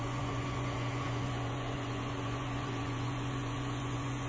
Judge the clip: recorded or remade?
remade